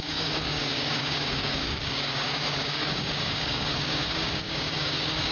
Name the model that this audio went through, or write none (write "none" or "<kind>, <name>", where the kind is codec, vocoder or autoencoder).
codec, DAC